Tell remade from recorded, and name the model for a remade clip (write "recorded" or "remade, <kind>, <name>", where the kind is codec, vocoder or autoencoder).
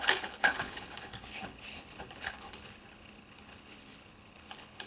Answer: remade, codec, HILCodec